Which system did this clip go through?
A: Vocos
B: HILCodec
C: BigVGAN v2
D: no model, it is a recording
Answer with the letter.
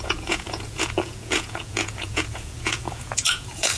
A